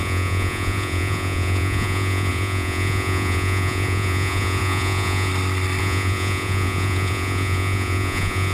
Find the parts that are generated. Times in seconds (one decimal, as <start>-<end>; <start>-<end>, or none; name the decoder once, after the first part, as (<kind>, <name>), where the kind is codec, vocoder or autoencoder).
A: 0.0-5.3 (vocoder, Vocos); 5.8-8.5